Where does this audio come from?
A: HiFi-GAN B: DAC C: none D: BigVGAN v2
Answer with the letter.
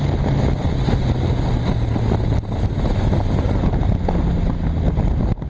C